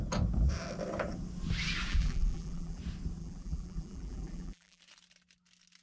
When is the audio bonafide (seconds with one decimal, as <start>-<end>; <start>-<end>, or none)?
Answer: 0.0-1.9; 2.8-3.2; 4.8-5.8